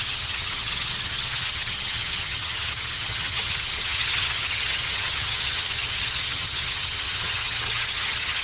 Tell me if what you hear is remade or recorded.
remade